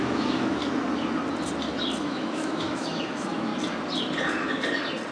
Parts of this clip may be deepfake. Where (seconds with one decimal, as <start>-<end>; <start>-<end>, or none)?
0.0-0.6; 2.0-3.5